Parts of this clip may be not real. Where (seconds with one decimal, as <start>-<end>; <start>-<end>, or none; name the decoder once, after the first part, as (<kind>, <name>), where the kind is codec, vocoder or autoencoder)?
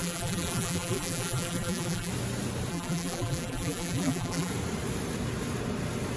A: 0.0-2.1 (vocoder, BigVGAN v2); 2.7-4.5